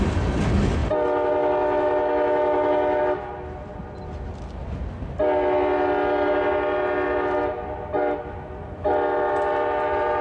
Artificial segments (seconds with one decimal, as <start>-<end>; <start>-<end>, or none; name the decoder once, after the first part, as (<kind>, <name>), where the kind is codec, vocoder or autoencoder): none